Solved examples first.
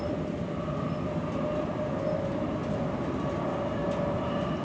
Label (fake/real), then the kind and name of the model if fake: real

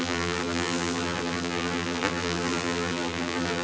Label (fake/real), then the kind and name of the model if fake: fake, vocoder, BigVGAN v2